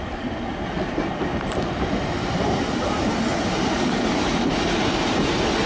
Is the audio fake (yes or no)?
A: no